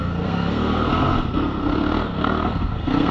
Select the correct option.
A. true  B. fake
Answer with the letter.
B